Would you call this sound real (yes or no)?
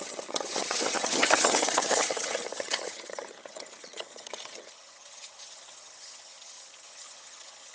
no